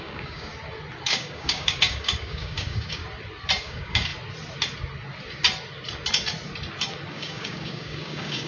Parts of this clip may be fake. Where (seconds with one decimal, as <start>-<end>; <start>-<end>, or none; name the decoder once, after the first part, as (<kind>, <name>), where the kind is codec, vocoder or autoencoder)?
0.0-0.5 (codec, DAC); 1.0-3.0; 3.6-4.1; 7.1-8.5